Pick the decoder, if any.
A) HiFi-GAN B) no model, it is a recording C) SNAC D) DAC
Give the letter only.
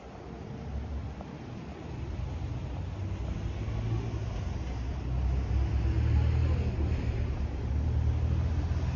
B